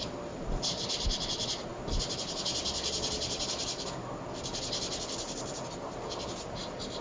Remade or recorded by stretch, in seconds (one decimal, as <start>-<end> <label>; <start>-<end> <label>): 0.0-7.0 recorded